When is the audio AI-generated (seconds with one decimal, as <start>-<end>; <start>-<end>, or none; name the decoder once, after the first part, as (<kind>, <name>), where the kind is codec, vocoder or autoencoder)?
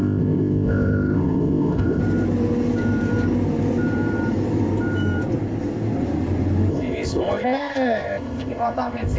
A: 0.0-2.0 (codec, ZipCodec); 6.7-9.2